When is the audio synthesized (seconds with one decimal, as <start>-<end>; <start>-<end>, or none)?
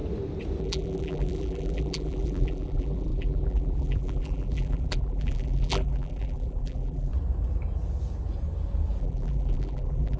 0.6-7.1; 9.0-10.2